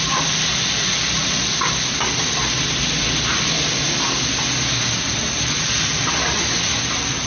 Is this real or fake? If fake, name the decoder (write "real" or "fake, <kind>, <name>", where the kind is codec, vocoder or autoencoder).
real